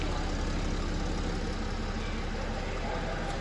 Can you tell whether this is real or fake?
real